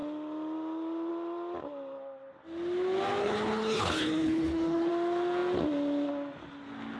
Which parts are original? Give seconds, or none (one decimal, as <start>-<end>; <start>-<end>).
0.0-3.2; 4.9-7.0